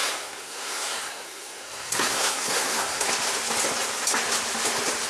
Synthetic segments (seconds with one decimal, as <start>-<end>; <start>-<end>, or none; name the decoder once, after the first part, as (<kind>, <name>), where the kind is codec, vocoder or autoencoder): 0.0-3.1 (codec, SNAC)